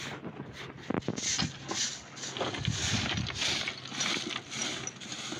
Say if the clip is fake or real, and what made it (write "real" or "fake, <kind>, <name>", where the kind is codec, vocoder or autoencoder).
real